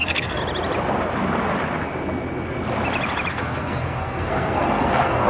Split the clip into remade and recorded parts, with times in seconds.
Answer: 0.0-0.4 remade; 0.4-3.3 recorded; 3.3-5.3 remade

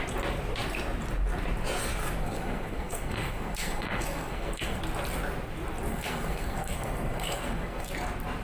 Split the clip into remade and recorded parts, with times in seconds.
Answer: 0.0-2.2 recorded; 2.2-4.8 remade; 4.8-5.9 recorded; 5.9-7.9 remade; 7.9-8.4 recorded

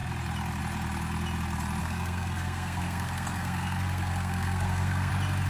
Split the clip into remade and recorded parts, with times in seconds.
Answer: 0.0-1.8 recorded; 1.8-5.1 remade; 5.1-5.5 recorded

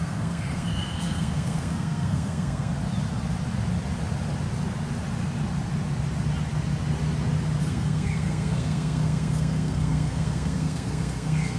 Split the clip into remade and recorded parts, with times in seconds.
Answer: 0.0-2.7 remade; 2.7-7.6 recorded; 7.6-11.6 remade